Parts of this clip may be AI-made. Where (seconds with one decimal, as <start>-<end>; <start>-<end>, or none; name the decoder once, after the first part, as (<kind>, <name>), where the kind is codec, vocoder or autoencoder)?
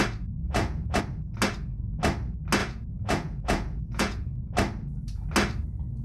0.4-1.0 (vocoder, Vocos); 2.6-4.4